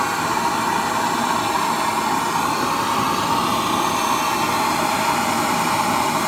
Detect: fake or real real